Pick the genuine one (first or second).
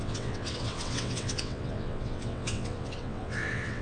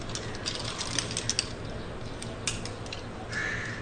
second